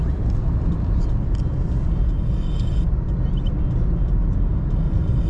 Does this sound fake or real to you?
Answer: real